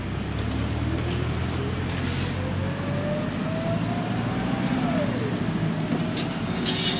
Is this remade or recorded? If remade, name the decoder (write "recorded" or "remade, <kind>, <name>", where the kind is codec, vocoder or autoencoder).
recorded